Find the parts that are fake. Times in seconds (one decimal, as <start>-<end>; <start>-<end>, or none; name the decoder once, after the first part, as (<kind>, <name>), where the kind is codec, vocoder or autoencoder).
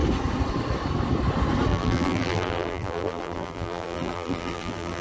1.7-5.0 (vocoder, BigVGAN v2)